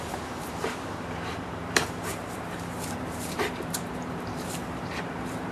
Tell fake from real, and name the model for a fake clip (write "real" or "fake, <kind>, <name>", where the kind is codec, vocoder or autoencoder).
fake, vocoder, BigVGAN v2